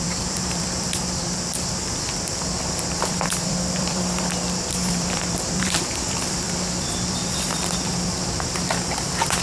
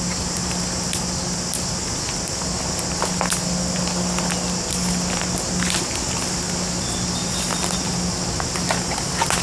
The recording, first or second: second